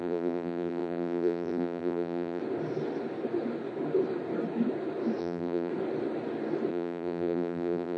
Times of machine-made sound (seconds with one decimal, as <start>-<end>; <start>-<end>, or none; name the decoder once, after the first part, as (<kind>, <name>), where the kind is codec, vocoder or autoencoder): 0.0-2.4 (vocoder, BigVGAN v2); 5.2-5.7; 6.7-8.0